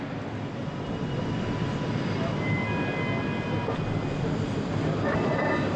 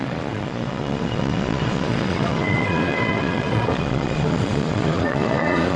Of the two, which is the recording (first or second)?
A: first